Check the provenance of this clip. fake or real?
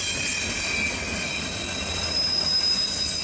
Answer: real